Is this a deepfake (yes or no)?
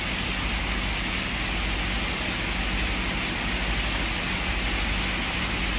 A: no